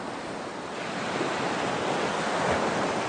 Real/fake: real